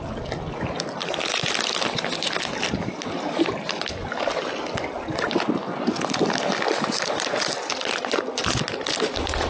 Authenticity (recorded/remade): recorded